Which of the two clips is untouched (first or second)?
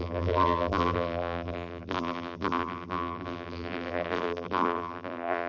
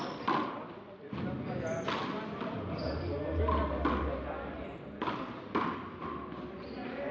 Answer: second